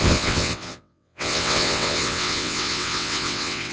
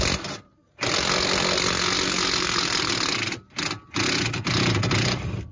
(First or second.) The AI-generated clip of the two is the first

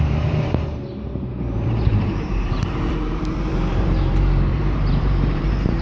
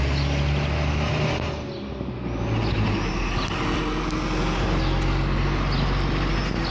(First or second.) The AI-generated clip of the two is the first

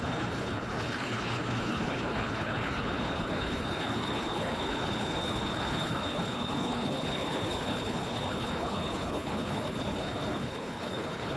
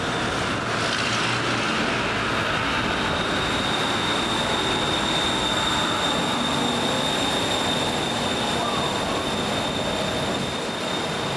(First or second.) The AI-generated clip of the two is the first